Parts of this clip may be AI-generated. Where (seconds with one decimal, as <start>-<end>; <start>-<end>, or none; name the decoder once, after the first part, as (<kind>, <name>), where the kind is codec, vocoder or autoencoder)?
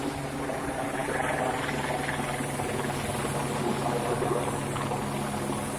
none